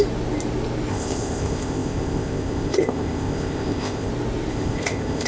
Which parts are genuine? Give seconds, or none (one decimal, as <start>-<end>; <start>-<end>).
0.0-0.9; 4.1-4.5